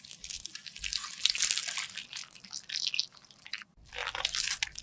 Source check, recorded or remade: recorded